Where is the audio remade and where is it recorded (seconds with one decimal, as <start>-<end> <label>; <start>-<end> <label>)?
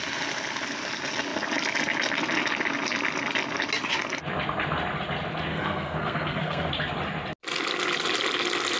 0.0-5.5 recorded; 5.5-6.7 remade; 6.7-8.8 recorded